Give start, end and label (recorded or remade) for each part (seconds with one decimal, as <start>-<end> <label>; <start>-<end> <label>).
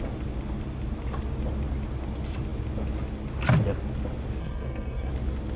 0.0-4.4 recorded; 4.4-5.1 remade; 5.1-5.6 recorded